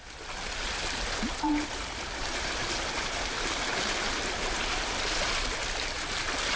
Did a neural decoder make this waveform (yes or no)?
no